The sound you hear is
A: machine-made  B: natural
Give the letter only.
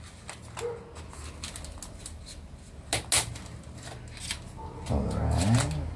B